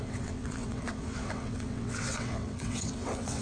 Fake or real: fake